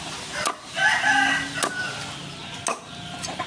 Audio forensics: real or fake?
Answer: real